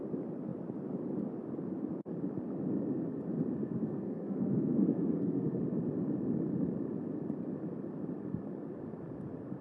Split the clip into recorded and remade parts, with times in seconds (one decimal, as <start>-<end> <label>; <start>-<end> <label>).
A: 0.0-3.6 recorded; 3.6-5.6 remade; 5.6-9.6 recorded